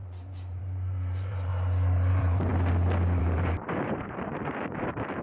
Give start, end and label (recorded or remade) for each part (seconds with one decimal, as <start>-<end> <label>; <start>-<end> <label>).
0.0-1.5 remade; 1.5-2.1 recorded; 2.1-2.5 remade; 2.5-3.2 recorded; 3.2-5.2 remade